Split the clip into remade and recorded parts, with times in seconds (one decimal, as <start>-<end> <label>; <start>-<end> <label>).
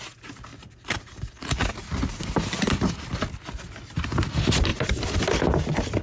0.0-0.5 recorded; 0.5-2.2 remade; 2.2-4.7 recorded; 4.7-5.4 remade; 5.4-6.0 recorded